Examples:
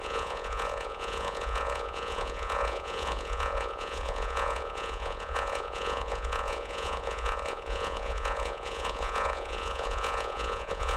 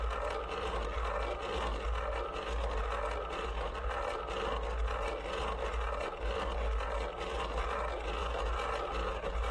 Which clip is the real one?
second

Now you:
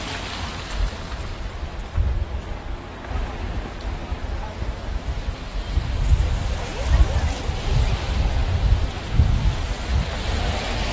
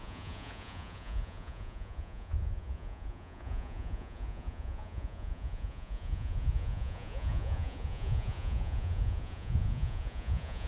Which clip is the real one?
first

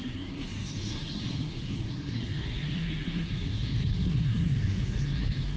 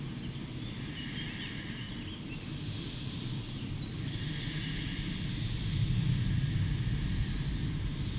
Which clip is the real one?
second